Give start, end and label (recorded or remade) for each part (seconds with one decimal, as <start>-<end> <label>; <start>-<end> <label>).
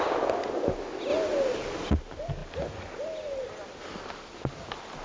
0.0-5.0 recorded